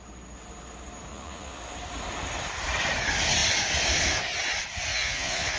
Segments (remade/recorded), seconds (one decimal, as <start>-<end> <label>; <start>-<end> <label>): 0.0-1.1 recorded; 1.1-1.6 remade; 1.6-4.9 recorded; 4.9-5.6 remade